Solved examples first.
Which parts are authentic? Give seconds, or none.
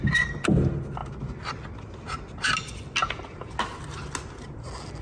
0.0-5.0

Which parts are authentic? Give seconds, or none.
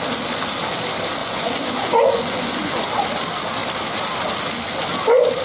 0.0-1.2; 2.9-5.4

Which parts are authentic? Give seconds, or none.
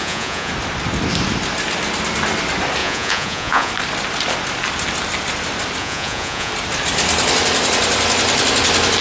0.5-2.8; 3.7-5.8; 6.5-9.0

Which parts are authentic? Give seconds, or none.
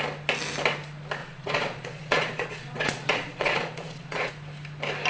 0.0-1.2; 4.3-5.1